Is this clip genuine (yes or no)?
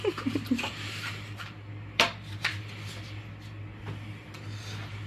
yes